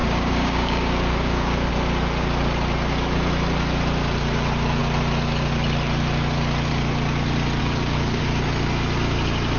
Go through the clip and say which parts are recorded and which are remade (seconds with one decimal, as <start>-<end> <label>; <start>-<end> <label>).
0.0-1.7 remade; 1.7-7.6 recorded; 7.6-8.2 remade; 8.2-9.6 recorded